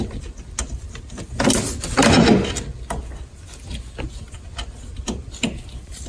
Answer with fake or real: real